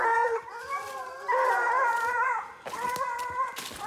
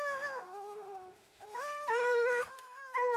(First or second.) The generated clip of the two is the second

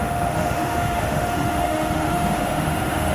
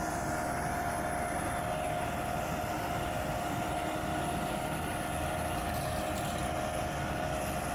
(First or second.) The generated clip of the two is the first